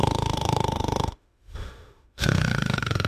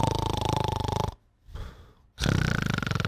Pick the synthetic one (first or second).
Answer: first